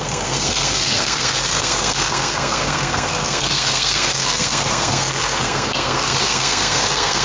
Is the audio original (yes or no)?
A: no